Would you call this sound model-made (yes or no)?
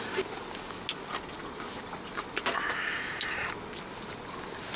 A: no